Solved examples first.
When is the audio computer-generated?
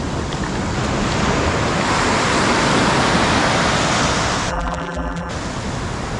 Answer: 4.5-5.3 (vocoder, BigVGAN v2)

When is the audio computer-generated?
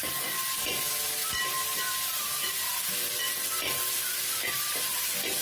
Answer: none